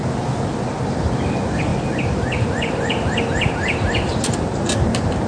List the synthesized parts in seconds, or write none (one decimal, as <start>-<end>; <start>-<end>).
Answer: none